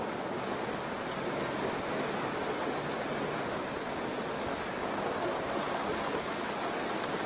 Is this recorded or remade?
recorded